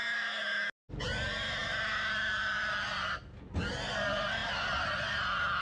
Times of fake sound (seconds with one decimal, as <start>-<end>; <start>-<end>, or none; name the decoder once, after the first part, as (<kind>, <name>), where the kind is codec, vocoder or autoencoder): none